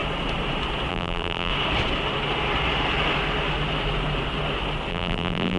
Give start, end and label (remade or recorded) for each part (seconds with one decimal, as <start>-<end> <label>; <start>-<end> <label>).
0.0-0.9 recorded; 0.9-1.5 remade; 1.5-4.9 recorded; 4.9-5.6 remade